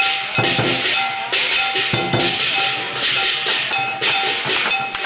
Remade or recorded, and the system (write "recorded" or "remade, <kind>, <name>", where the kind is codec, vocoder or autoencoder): recorded